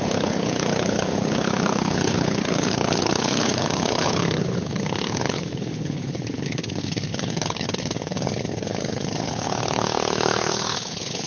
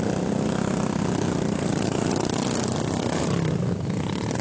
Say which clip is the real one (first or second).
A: second